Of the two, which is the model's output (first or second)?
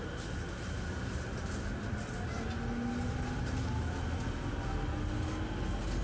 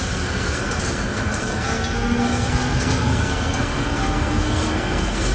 second